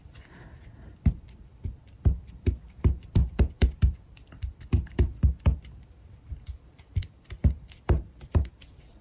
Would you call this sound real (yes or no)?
no